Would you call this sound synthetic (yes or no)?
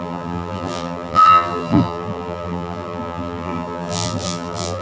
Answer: yes